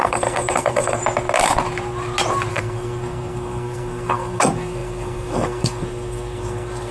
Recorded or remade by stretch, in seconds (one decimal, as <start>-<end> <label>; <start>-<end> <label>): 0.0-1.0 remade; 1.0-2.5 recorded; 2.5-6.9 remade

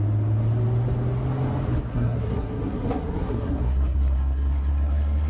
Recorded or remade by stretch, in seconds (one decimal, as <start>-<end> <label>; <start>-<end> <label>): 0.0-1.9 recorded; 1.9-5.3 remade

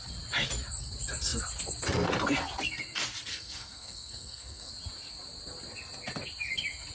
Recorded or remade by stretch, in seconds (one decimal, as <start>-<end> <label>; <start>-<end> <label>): 0.0-3.3 recorded; 3.3-4.7 remade; 4.7-6.9 recorded

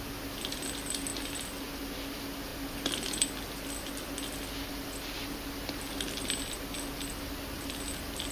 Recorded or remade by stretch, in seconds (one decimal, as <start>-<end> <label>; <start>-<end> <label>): 0.0-8.3 recorded

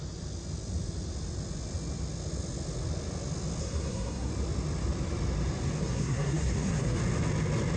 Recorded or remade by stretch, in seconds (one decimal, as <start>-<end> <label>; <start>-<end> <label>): 0.0-3.6 recorded; 3.6-4.3 remade; 4.3-5.8 recorded; 5.8-7.0 remade; 7.0-7.8 recorded

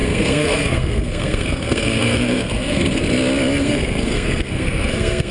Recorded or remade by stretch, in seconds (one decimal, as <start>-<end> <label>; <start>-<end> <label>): 0.0-3.0 remade; 3.0-3.6 recorded; 3.6-5.3 remade